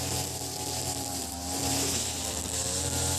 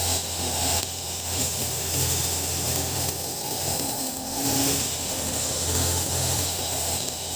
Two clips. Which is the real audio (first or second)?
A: first